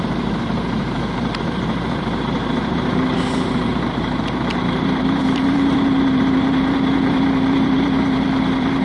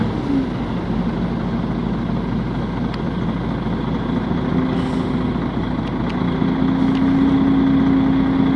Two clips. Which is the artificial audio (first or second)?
first